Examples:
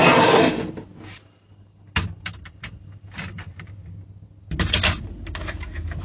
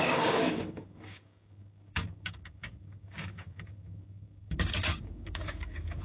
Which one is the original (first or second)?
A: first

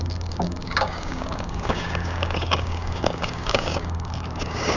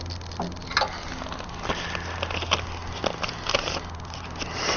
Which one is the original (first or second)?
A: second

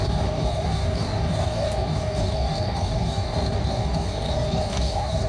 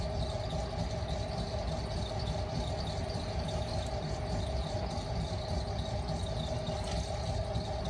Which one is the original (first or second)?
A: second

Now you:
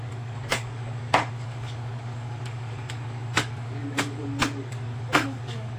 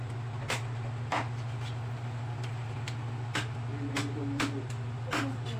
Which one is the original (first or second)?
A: second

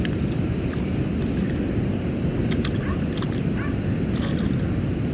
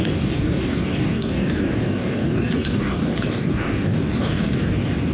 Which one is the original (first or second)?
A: first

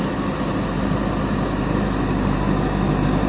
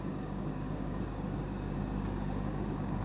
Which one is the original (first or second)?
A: first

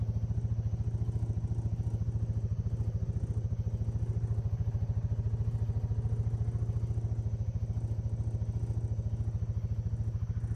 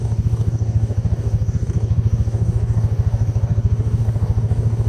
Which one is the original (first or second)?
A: first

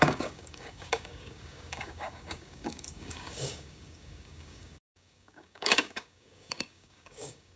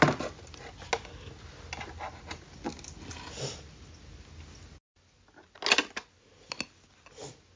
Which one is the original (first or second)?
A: second